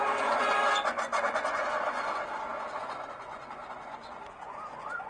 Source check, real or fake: fake